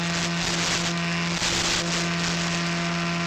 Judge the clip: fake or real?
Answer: real